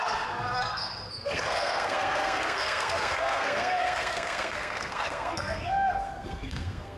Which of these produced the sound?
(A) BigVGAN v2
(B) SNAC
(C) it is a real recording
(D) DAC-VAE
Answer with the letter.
B